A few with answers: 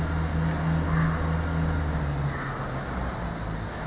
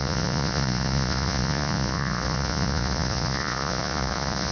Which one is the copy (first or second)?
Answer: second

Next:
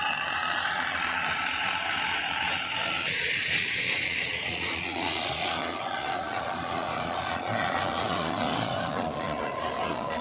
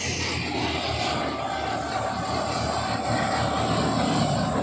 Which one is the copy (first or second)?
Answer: first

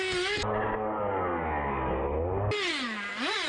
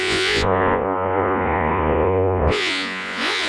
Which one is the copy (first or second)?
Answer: second